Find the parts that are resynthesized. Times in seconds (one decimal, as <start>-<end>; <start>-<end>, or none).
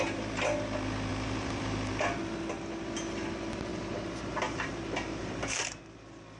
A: 1.1-1.9; 3.7-5.8